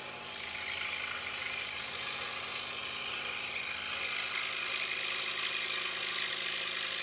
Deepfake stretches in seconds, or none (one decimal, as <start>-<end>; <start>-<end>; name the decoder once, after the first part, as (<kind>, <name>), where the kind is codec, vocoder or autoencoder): 1.4-2.2 (vocoder, BigVGAN v2)

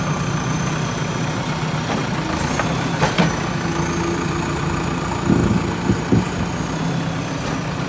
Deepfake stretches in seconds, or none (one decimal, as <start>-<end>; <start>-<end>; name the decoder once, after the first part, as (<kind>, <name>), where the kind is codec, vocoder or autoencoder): none

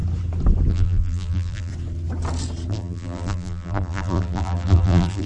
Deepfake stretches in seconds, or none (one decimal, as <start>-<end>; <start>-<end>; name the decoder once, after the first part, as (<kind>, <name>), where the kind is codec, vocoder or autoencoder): 0.7-1.7 (vocoder, BigVGAN v2); 2.7-5.3

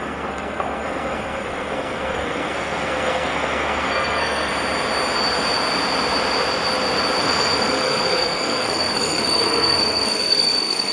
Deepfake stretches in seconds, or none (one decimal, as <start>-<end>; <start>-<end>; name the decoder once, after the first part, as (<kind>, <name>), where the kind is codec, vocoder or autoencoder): 0.0-4.5 (codec, SNAC); 7.2-10.9

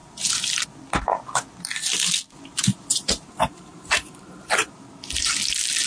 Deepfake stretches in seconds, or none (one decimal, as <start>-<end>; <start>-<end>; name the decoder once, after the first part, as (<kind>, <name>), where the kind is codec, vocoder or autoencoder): 0.0-0.5 (vocoder, BigVGAN v2); 2.5-5.3

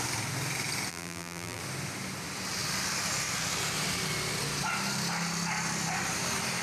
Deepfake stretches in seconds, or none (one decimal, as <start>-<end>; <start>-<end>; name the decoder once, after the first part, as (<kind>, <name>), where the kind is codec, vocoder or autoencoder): 0.9-1.6 (vocoder, BigVGAN v2)